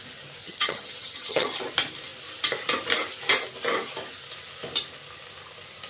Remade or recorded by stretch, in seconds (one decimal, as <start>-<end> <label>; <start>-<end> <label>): 0.0-0.4 recorded; 0.4-1.6 remade; 1.6-5.9 recorded